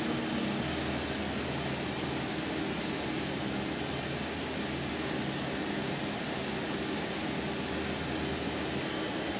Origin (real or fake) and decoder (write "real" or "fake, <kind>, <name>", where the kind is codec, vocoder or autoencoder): real